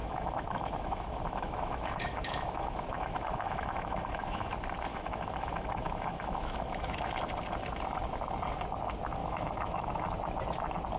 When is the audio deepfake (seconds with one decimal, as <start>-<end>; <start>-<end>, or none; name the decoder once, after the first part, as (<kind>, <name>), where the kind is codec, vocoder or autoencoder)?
0.0-4.5 (autoencoder, DAC-VAE); 4.9-7.1; 9.2-9.9